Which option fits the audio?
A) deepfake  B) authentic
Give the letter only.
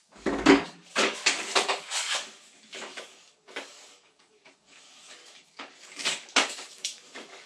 A